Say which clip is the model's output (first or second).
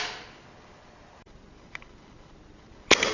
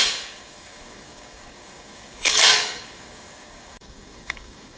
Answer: second